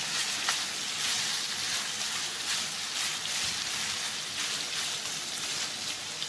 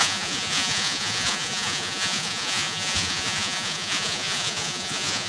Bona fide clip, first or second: first